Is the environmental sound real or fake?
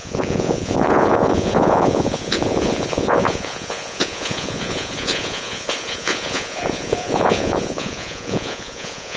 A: fake